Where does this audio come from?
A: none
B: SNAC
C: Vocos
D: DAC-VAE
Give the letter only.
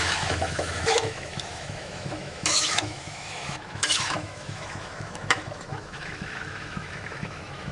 D